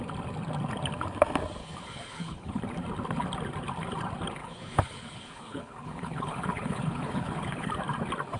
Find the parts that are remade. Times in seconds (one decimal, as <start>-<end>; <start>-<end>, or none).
1.6-2.6; 4.4-7.7